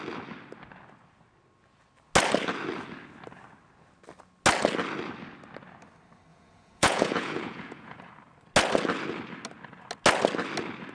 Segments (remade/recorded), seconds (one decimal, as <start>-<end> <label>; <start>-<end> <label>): 0.0-6.3 recorded; 6.3-8.1 remade; 8.1-10.9 recorded

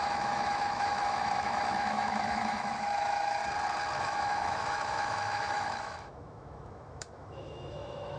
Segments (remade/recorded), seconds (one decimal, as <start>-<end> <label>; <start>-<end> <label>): 0.0-3.4 remade; 3.4-4.0 recorded; 4.0-8.2 remade

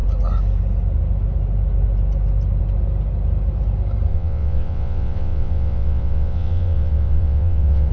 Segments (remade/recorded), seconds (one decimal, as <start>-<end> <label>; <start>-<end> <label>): 0.0-4.1 recorded; 4.1-7.9 remade

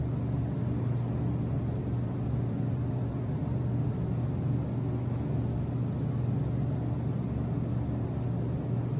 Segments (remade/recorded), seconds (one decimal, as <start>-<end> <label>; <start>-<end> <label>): 0.0-1.8 recorded; 1.8-4.0 remade; 4.0-9.0 recorded

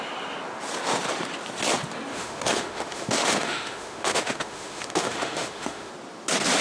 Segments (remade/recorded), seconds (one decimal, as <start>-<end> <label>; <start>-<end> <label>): 0.0-2.1 recorded; 2.1-5.9 remade; 5.9-6.6 recorded

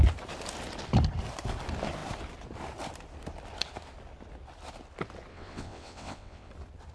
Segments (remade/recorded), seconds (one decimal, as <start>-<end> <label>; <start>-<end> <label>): 0.0-5.3 recorded; 5.3-6.5 remade; 6.5-6.9 recorded

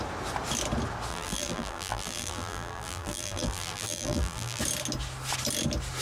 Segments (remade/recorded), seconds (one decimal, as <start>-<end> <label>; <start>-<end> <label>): 0.0-1.1 recorded; 1.1-4.6 remade; 4.6-6.0 recorded